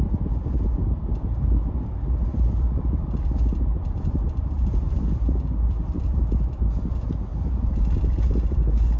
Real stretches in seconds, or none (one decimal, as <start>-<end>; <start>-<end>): 0.0-2.3; 6.5-7.3; 7.9-9.0